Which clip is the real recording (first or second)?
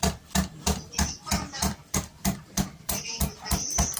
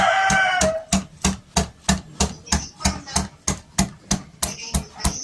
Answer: second